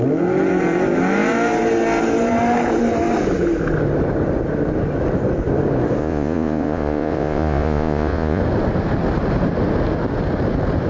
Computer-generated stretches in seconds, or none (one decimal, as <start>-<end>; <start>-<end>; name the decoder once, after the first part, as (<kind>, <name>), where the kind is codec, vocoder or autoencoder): 6.0-8.4 (vocoder, Vocos)